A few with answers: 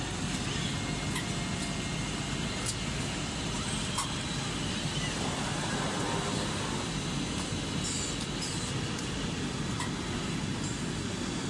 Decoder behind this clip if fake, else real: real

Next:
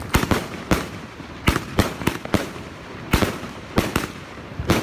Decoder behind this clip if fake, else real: fake, vocoder, BigVGAN v2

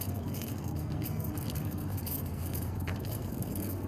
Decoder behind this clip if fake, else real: fake, codec, SNAC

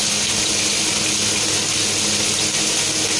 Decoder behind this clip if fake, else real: real